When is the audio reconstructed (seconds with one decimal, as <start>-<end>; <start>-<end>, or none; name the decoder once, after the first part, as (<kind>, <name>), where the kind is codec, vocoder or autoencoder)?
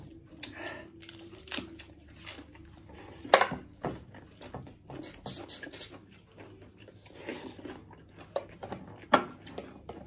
none